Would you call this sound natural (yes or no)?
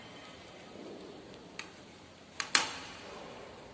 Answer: yes